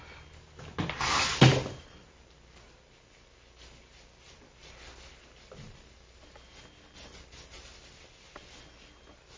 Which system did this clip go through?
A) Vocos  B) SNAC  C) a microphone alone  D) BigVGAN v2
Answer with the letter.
C